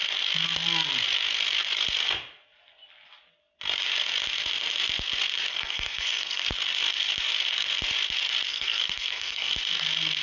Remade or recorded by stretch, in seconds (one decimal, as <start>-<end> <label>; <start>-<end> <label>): 0.0-5.5 recorded; 5.5-6.4 remade; 6.4-8.5 recorded; 8.5-9.5 remade; 9.5-10.2 recorded